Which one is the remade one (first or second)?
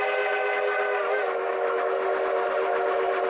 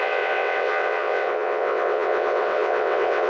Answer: second